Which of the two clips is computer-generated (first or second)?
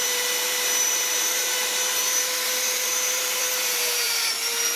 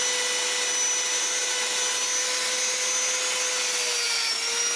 first